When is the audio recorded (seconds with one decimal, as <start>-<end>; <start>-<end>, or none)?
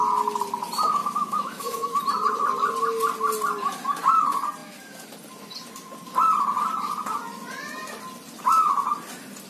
0.0-1.0; 2.0-9.5